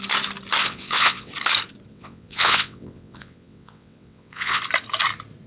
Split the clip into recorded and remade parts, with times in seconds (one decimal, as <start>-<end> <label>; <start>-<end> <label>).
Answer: 0.0-0.6 recorded; 0.6-1.3 remade; 1.3-1.9 recorded; 1.9-4.6 remade; 4.6-5.5 recorded